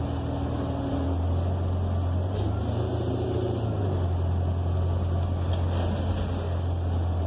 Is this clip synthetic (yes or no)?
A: no